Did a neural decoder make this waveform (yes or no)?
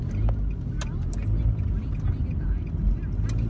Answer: no